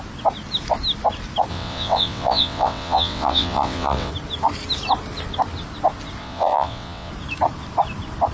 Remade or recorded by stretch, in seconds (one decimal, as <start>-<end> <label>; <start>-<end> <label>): 0.0-1.5 recorded; 1.5-4.1 remade; 4.1-6.2 recorded; 6.2-7.1 remade; 7.1-8.3 recorded